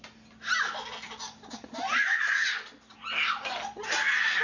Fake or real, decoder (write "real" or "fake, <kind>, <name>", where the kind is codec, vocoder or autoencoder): real